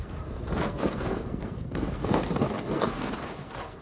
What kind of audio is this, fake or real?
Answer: fake